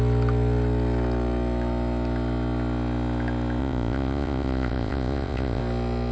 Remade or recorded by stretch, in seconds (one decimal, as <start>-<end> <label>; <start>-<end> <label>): 0.0-3.6 recorded; 3.6-5.6 remade; 5.6-6.1 recorded